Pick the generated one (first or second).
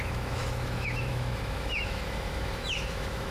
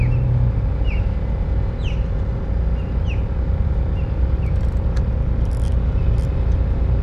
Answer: first